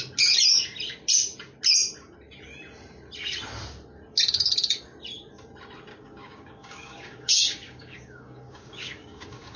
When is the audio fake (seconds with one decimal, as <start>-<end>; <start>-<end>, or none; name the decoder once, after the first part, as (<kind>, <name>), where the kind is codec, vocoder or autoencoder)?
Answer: 5.9-9.6 (codec, DAC)